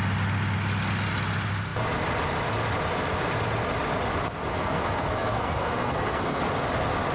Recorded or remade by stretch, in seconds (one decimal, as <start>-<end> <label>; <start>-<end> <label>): 0.0-4.5 recorded; 4.5-6.4 remade; 6.4-7.1 recorded